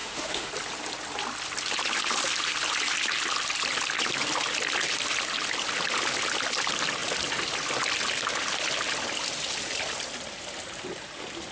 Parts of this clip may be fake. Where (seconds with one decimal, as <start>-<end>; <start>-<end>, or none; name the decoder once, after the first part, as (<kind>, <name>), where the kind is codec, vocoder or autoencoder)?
0.0-0.5 (autoencoder, DAC-VAE)